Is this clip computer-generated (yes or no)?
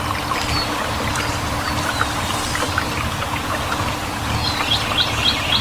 no